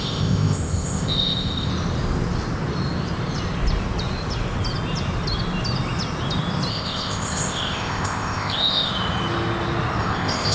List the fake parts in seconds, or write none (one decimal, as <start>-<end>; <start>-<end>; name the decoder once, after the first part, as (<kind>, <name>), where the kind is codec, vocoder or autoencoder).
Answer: 0.0-1.7 (codec, ZipCodec); 6.7-8.9; 10.0-10.5